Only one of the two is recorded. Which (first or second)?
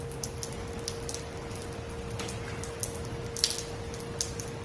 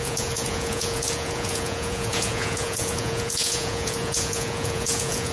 first